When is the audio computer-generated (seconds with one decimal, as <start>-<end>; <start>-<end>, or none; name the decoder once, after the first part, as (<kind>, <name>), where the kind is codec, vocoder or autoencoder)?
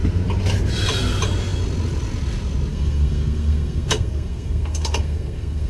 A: 2.7-5.7 (codec, SNAC)